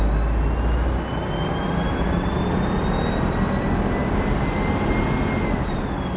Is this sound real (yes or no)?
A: yes